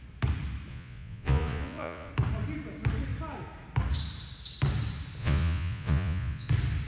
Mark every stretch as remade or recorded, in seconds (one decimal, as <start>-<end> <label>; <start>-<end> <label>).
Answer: 0.0-0.7 recorded; 0.7-2.1 remade; 2.1-5.2 recorded; 5.2-6.5 remade; 6.5-6.9 recorded